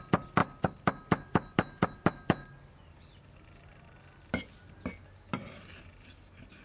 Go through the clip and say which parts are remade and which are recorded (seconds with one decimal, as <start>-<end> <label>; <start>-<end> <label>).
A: 0.0-6.6 recorded